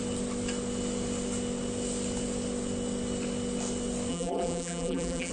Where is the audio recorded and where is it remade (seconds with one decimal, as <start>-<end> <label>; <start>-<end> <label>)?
0.0-4.1 recorded; 4.1-5.3 remade